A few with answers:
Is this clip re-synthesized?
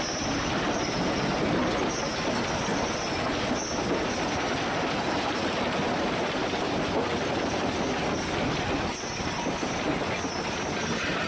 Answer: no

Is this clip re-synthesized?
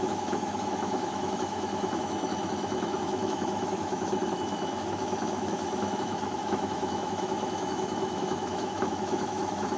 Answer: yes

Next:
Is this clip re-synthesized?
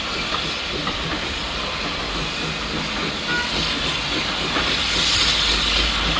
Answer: no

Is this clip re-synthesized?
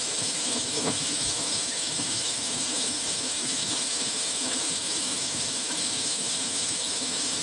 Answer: yes